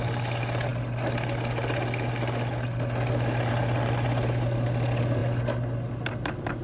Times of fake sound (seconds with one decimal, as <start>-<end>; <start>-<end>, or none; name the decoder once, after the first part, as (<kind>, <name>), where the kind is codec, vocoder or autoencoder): none